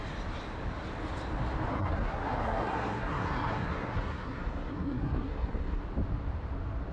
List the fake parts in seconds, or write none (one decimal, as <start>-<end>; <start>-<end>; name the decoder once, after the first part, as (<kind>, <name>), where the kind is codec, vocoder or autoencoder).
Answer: 1.7-5.8 (codec, SNAC)